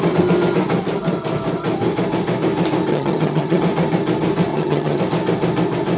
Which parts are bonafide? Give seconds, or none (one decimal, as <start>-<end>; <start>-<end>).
0.0-2.9; 3.6-4.5; 5.0-6.0